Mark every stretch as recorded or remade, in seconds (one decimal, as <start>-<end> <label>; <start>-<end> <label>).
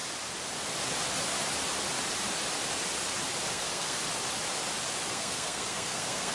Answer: 0.0-3.5 recorded; 3.5-4.0 remade; 4.0-5.1 recorded; 5.1-6.3 remade